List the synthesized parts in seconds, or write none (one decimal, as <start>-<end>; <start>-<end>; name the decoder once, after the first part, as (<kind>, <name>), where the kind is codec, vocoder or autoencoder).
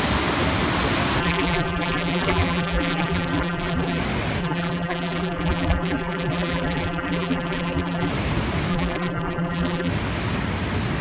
1.2-4.0 (vocoder, BigVGAN v2); 4.4-8.1; 8.7-9.9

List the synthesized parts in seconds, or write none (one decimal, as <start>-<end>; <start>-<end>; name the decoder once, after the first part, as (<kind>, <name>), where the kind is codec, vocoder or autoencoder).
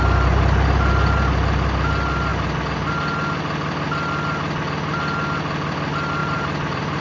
6.2-7.0 (vocoder, BigVGAN v2)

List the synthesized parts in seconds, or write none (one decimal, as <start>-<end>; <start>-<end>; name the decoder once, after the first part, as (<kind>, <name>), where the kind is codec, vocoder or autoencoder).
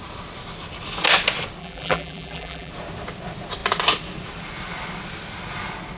1.6-2.7 (vocoder, BigVGAN v2)